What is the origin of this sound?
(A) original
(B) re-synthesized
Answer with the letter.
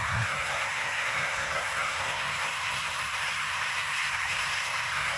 B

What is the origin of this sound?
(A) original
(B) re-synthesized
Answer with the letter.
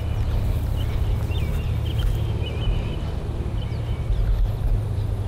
A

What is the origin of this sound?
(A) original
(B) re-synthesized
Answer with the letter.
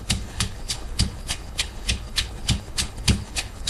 B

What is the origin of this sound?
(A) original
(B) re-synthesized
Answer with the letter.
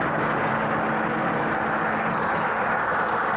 A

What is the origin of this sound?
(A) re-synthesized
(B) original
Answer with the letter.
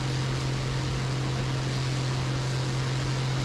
B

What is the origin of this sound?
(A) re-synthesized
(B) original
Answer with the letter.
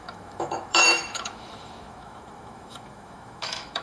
A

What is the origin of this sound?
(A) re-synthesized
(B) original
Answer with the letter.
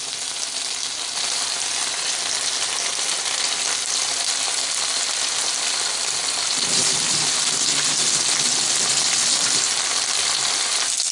B